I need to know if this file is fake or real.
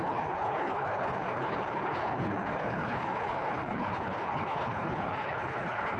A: fake